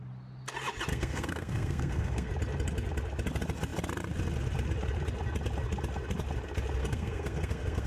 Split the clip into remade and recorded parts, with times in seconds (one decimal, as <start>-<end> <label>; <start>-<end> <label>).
0.0-0.9 recorded; 0.9-2.3 remade; 2.3-6.8 recorded; 6.8-7.9 remade